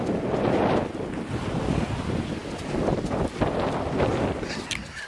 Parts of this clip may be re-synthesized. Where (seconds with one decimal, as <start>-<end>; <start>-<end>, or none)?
none